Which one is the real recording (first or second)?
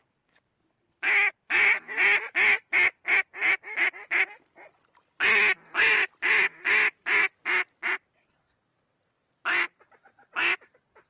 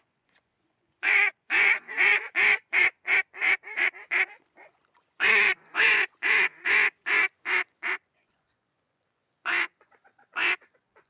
first